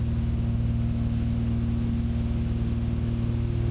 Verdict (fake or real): real